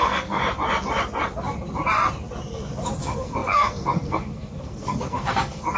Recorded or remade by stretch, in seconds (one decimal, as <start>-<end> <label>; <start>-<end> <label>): 0.0-0.4 remade; 0.4-3.0 recorded; 3.0-5.8 remade